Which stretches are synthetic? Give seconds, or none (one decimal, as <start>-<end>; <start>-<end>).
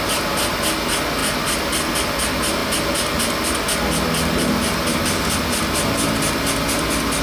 none